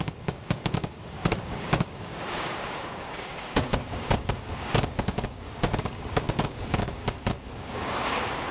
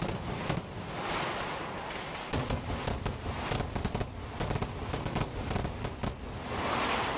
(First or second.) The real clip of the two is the second